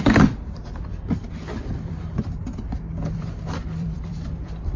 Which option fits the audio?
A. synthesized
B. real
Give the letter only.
A